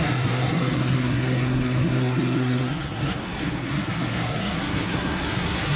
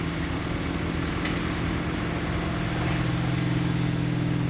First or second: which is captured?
second